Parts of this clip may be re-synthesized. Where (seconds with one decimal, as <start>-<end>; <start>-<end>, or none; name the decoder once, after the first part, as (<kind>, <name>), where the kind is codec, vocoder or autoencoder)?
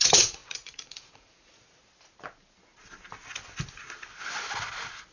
0.0-1.8 (vocoder, Vocos)